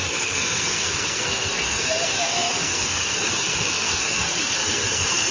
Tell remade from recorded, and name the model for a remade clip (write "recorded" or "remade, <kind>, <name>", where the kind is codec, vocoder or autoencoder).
remade, codec, SNAC